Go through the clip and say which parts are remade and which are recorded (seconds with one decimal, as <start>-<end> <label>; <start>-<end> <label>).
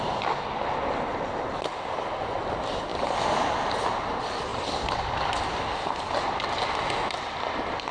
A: 0.0-7.9 recorded